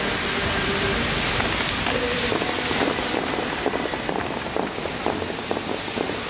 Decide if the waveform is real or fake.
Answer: real